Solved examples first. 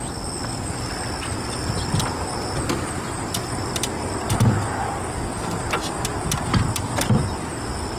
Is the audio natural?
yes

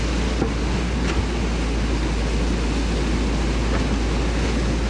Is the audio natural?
yes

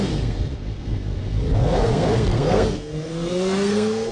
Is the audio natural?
no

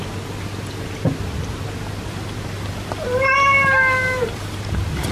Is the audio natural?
yes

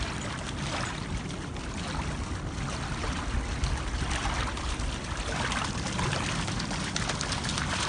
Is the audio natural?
yes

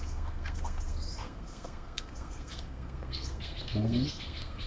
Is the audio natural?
no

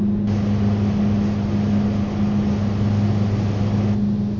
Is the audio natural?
yes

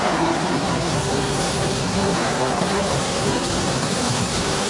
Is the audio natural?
no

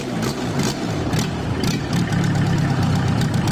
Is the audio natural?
yes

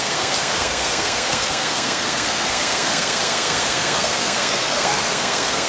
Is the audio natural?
no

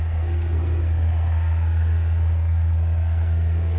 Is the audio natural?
no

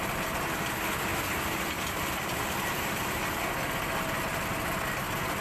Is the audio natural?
yes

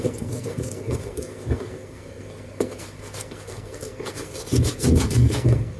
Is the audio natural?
no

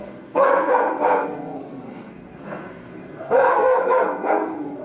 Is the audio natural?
no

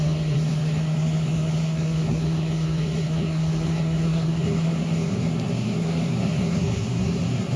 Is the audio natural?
no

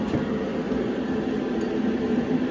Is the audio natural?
yes